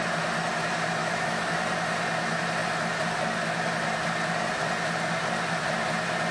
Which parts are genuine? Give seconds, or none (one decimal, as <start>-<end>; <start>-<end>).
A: 0.0-1.0; 1.6-6.3